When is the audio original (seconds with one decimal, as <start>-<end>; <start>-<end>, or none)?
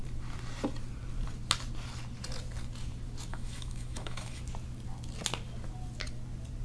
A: 0.0-3.3; 4.4-6.6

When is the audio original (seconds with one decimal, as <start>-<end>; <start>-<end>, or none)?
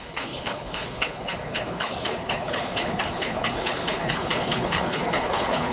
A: none